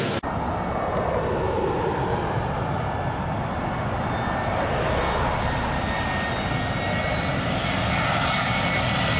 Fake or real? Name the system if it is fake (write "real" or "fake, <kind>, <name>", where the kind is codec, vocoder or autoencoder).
real